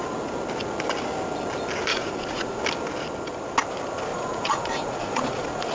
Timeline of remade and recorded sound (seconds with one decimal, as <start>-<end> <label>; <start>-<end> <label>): 0.0-1.9 recorded; 1.9-2.6 remade; 2.6-4.1 recorded; 4.1-5.7 remade